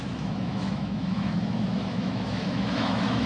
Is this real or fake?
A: fake